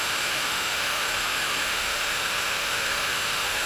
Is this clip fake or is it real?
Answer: fake